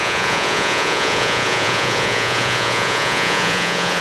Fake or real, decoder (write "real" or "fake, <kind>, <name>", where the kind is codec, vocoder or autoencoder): fake, vocoder, Vocos